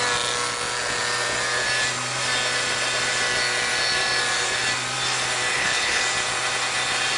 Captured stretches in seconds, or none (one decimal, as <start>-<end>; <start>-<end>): 0.0-5.5; 6.0-7.2